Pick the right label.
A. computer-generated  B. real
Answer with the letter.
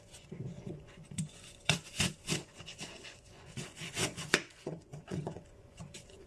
A